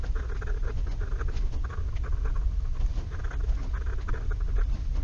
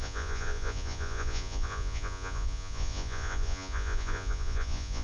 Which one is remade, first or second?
second